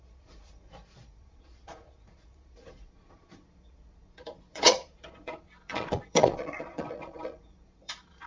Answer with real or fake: fake